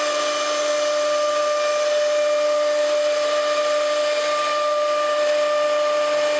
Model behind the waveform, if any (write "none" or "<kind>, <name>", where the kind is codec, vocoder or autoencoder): none